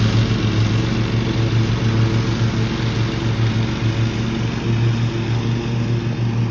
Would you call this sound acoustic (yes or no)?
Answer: yes